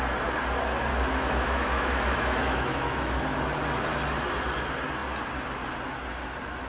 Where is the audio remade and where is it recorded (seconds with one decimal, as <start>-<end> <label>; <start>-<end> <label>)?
0.0-0.9 recorded; 0.9-3.1 remade; 3.1-6.7 recorded